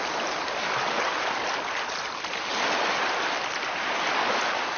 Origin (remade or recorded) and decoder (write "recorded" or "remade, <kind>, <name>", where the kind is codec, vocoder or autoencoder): recorded